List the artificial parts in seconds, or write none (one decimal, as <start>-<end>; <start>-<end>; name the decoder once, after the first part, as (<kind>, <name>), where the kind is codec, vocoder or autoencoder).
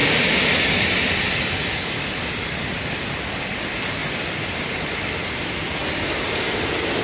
none